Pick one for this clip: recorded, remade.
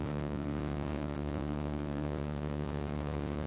remade